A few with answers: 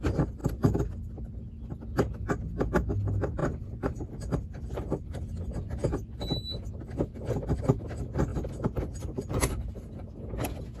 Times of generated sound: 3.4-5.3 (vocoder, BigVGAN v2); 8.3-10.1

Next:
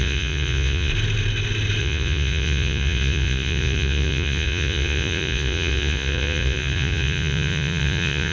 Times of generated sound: 0.0-0.9 (vocoder, Vocos); 1.8-8.3

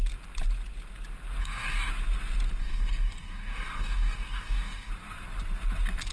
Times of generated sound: 1.4-1.9 (codec, DAC); 2.6-4.9

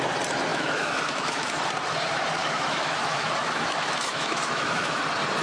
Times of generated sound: 0.5-1.6 (autoencoder, DAC-VAE); 2.4-5.0

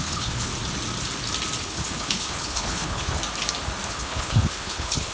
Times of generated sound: 0.0-0.5 (codec, HILCodec); 1.6-3.2; 3.9-5.1

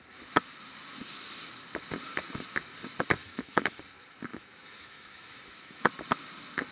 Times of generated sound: 3.2-3.8 (autoencoder, DAC-VAE); 4.3-5.9

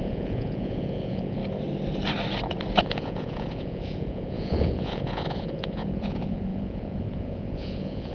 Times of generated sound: 0.0-1.4 (vocoder, Vocos); 2.8-8.1